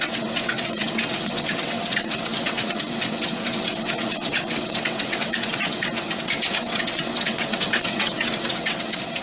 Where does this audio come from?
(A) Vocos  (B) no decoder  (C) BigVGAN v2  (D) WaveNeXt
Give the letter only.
D